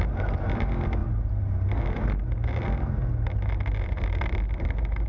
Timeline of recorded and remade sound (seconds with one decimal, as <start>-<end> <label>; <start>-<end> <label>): 0.0-5.1 recorded